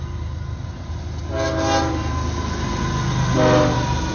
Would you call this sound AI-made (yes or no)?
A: no